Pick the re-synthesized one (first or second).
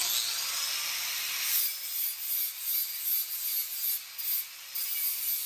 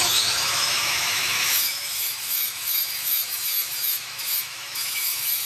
second